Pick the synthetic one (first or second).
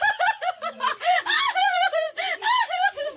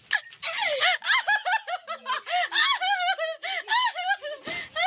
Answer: first